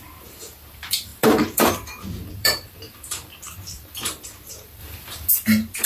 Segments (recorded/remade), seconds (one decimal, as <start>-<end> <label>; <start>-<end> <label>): 0.0-5.9 remade